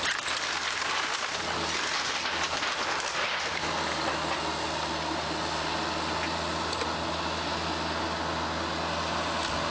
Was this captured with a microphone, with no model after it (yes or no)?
yes